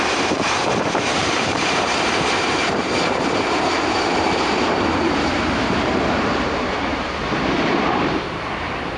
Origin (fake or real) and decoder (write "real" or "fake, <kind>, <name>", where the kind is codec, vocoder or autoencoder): fake, vocoder, BigVGAN v2